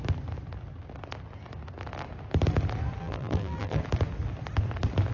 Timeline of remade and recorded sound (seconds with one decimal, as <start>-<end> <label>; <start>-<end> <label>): 0.0-3.0 recorded; 3.0-3.8 remade; 3.8-5.1 recorded